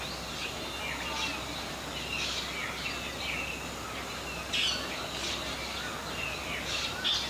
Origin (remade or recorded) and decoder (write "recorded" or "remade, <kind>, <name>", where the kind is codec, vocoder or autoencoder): recorded